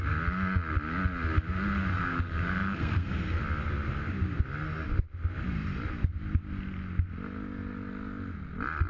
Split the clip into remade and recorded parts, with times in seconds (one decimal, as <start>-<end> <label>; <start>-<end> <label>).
0.0-1.9 recorded; 1.9-3.4 remade; 3.4-8.9 recorded